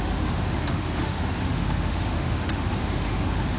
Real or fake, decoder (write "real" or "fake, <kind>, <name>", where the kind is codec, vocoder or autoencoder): fake, autoencoder, DAC-VAE